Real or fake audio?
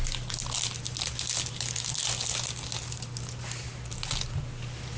real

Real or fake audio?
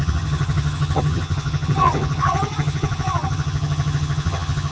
fake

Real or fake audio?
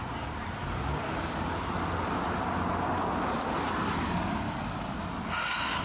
real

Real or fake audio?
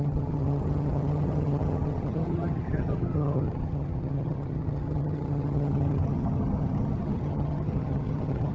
fake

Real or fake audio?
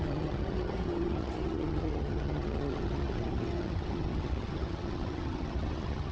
fake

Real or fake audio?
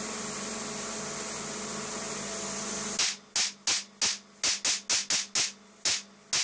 real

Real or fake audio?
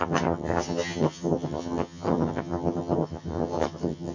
fake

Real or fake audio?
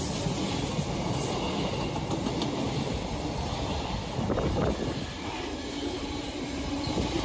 real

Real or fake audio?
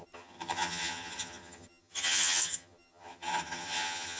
fake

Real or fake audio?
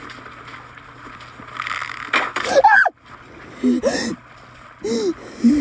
real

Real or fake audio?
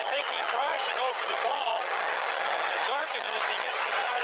fake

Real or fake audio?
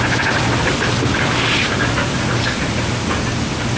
real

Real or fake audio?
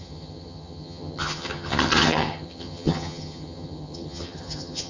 fake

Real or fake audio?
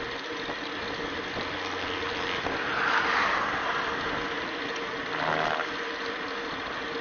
real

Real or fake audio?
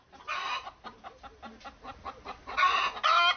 real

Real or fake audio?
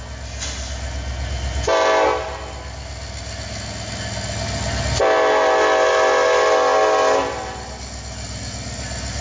real